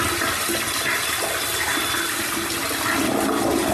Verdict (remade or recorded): recorded